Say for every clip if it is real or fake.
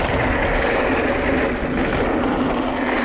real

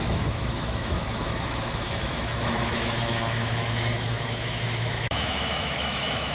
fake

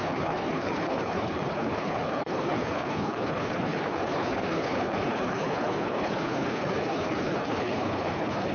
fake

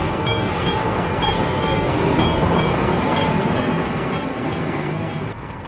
fake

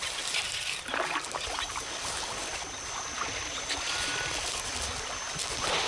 real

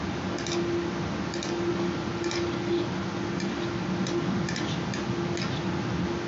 real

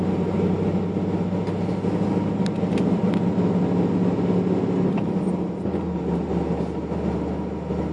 real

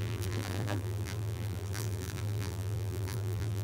fake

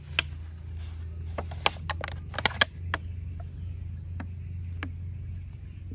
real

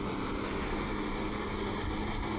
real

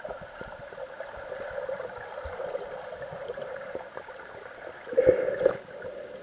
real